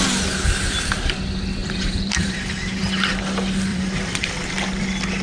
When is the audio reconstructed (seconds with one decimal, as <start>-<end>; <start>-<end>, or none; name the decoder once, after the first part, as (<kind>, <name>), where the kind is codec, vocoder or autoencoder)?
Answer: 1.6-3.1 (vocoder, BigVGAN v2); 3.7-4.3